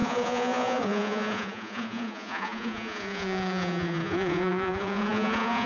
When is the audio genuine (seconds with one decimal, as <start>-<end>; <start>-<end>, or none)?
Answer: none